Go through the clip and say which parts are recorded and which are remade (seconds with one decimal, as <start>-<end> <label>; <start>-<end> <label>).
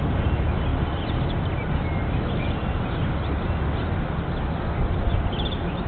0.0-5.9 recorded